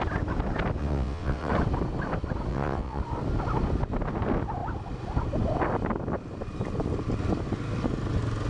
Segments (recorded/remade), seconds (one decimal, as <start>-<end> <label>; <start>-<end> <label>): 0.0-0.8 recorded; 0.8-1.5 remade; 1.5-2.5 recorded; 2.5-3.0 remade; 3.0-8.5 recorded

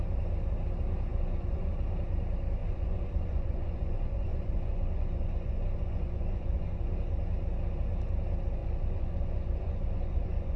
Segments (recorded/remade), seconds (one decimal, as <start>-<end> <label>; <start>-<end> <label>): 0.0-1.1 recorded; 1.1-1.7 remade; 1.7-2.6 recorded; 2.6-6.8 remade; 6.8-8.6 recorded; 8.6-10.6 remade

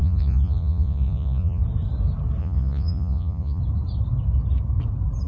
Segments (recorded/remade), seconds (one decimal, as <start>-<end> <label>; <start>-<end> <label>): 0.0-1.6 remade; 1.6-2.4 recorded; 2.4-3.6 remade; 3.6-5.3 recorded

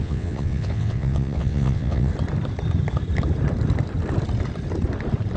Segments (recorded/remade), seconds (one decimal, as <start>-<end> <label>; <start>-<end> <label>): 0.0-2.1 remade; 2.1-5.4 recorded

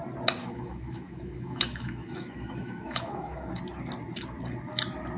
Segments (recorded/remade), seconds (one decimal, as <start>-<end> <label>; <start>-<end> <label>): 0.0-0.4 recorded; 0.4-3.5 remade; 3.5-5.2 recorded

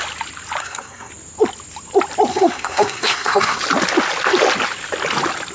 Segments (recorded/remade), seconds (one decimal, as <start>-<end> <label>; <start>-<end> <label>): 0.0-0.6 recorded; 0.6-1.1 remade; 1.1-2.3 recorded; 2.3-3.6 remade; 3.6-5.5 recorded